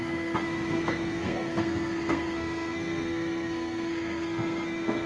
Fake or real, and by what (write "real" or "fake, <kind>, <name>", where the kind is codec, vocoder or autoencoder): fake, codec, SNAC